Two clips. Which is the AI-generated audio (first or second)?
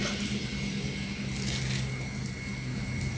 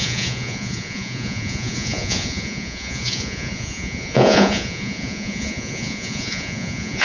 second